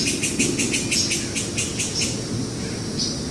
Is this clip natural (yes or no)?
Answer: yes